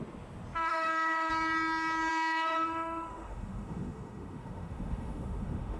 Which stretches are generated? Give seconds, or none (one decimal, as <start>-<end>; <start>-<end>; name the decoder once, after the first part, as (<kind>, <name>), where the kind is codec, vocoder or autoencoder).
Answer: 0.6-1.3 (autoencoder, DAC-VAE); 2.1-5.8